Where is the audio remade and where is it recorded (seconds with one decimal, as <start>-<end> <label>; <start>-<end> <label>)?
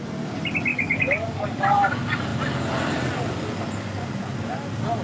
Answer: 0.0-0.7 recorded; 0.7-1.6 remade; 1.6-5.0 recorded